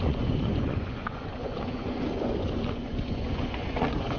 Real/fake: fake